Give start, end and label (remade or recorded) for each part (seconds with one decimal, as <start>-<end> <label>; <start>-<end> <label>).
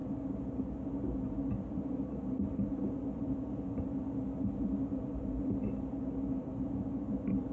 0.0-0.8 remade; 0.8-7.5 recorded